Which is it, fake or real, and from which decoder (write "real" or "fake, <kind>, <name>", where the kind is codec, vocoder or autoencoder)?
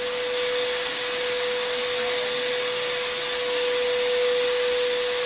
real